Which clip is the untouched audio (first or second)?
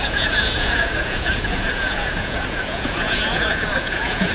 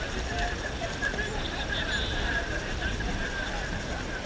second